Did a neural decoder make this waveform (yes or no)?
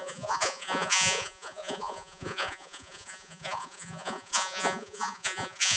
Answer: yes